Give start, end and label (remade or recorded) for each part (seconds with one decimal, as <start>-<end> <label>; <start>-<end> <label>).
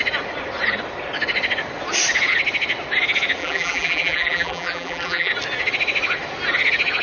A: 0.0-3.4 recorded; 3.4-5.3 remade; 5.3-7.0 recorded